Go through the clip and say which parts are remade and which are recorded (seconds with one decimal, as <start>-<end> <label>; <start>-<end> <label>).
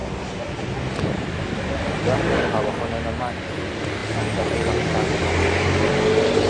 0.0-6.5 recorded